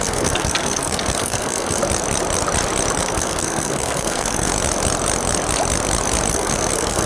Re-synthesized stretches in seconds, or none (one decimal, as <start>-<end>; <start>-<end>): 0.0-1.8; 3.0-4.5; 6.3-7.1